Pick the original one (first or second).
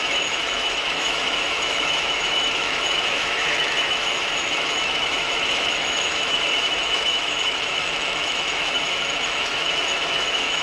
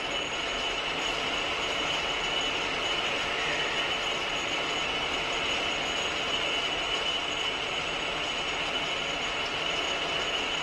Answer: second